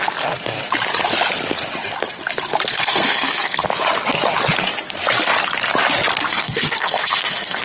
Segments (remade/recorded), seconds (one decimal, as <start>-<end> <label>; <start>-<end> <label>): 0.0-2.7 recorded; 2.7-3.6 remade; 3.6-6.3 recorded; 6.3-7.6 remade

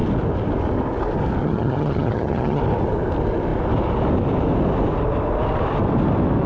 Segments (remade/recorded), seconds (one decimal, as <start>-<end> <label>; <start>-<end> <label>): 0.0-1.4 recorded; 1.4-2.6 remade; 2.6-6.5 recorded